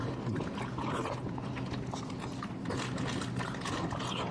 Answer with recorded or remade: recorded